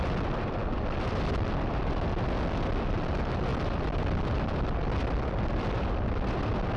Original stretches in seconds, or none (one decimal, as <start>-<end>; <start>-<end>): 0.0-0.6; 1.9-3.5; 6.3-6.8